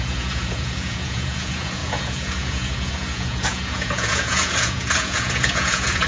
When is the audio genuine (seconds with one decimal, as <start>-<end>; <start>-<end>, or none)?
none